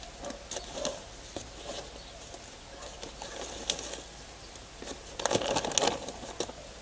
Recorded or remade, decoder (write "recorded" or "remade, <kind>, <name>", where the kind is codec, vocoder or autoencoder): recorded